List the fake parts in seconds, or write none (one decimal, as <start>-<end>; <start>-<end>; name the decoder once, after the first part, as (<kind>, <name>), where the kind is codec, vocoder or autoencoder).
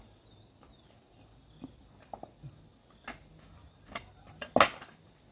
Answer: none